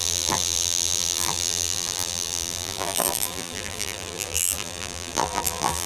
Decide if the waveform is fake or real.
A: fake